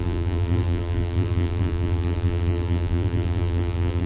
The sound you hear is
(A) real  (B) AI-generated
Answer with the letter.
B